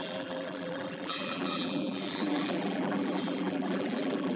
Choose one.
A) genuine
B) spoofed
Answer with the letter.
B